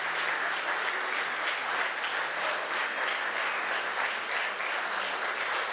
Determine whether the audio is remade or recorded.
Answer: recorded